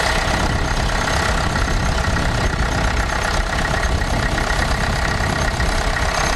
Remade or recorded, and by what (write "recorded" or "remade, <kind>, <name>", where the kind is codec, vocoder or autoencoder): recorded